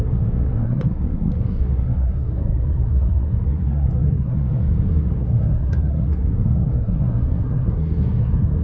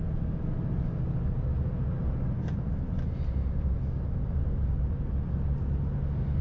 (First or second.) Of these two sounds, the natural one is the second